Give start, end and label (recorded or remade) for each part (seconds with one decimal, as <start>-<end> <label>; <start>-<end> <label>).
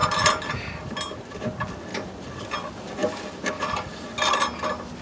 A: 0.0-0.9 remade; 0.9-1.9 recorded; 1.9-2.4 remade; 2.4-3.0 recorded; 3.0-4.1 remade; 4.1-5.0 recorded